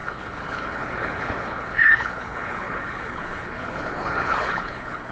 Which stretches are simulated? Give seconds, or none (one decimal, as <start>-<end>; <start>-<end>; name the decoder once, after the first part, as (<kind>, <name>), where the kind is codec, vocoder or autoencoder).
0.0-5.1 (codec, HILCodec)